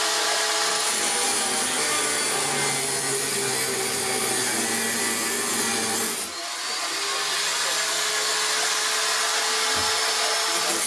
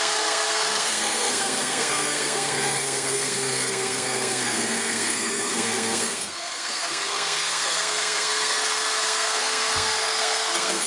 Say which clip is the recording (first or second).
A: first